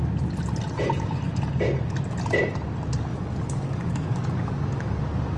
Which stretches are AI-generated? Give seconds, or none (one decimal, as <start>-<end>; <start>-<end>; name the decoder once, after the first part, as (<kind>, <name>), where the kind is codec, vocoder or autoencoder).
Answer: 3.1-5.0 (codec, DAC)